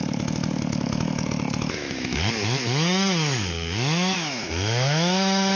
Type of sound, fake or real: fake